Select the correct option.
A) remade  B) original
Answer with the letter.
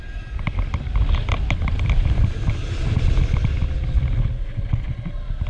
B